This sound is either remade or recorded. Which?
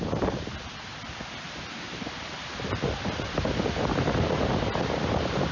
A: recorded